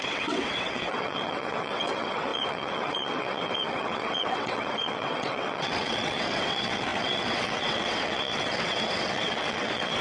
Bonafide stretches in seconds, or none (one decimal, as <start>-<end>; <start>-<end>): none